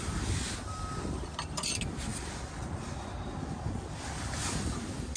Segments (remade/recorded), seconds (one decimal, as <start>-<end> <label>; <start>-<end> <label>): 0.0-5.2 recorded